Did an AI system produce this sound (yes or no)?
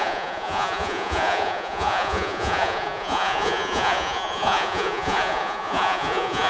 yes